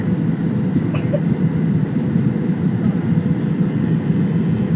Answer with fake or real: real